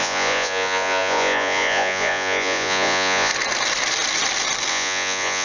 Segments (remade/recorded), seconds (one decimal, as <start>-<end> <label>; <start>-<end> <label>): 0.0-3.3 remade; 3.3-4.7 recorded; 4.7-5.4 remade